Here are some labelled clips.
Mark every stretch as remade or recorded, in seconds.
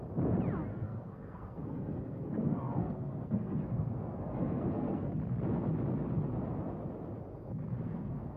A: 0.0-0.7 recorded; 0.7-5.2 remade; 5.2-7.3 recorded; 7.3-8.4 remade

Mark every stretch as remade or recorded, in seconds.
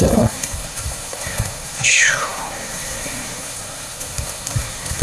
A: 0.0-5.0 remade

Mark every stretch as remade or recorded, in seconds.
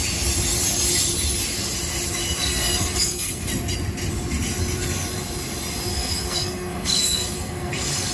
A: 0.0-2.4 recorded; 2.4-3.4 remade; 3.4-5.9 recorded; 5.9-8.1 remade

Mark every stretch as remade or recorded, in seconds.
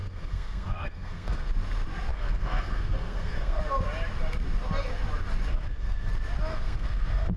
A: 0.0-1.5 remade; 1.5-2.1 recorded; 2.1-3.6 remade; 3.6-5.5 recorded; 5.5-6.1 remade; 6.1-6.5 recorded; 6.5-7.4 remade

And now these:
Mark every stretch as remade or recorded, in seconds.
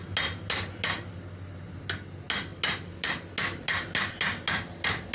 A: 0.0-5.1 recorded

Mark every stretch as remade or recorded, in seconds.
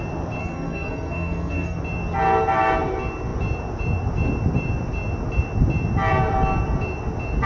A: 0.0-0.4 recorded; 0.4-1.8 remade; 1.8-7.5 recorded